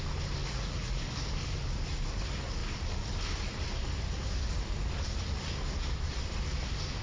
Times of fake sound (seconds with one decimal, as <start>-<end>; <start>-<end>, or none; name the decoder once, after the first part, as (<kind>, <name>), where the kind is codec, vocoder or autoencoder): 0.4-1.0 (vocoder, Vocos)